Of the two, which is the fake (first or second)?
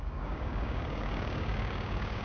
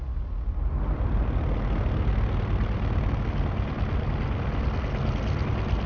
first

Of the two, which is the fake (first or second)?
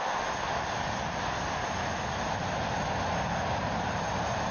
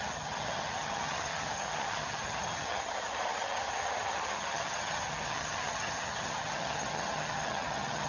second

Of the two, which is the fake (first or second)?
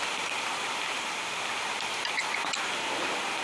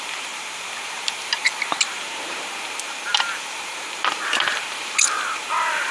second